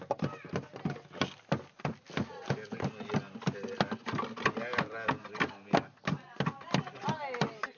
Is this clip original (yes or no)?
yes